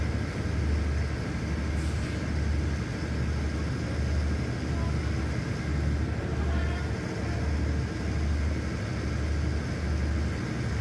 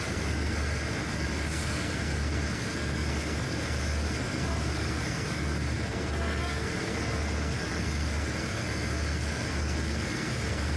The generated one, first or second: second